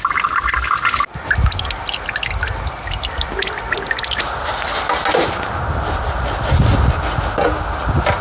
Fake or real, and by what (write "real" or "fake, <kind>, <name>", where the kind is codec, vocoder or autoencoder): real